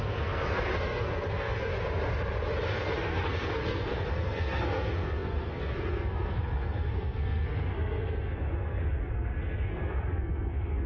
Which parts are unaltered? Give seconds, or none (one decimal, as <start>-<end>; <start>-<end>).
1.7-2.7